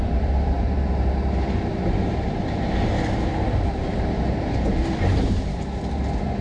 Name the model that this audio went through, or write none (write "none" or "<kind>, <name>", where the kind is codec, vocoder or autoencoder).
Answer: vocoder, BigVGAN v2